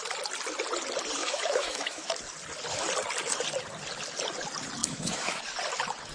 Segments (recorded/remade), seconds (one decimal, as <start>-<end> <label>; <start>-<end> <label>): 0.0-1.2 recorded; 1.2-2.1 remade; 2.1-4.8 recorded; 4.8-5.4 remade; 5.4-6.1 recorded